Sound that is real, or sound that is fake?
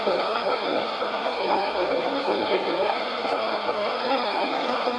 fake